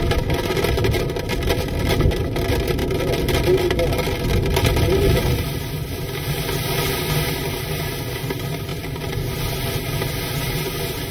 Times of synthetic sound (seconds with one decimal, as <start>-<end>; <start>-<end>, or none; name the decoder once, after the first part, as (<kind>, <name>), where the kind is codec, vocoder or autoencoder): none